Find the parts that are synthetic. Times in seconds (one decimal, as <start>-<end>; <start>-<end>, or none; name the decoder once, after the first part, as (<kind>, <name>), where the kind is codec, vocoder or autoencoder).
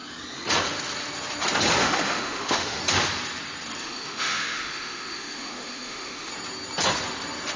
1.8-2.8 (autoencoder, DAC-VAE); 3.8-6.3